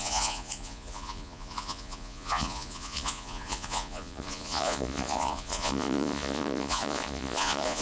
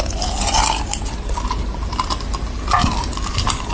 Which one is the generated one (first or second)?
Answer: first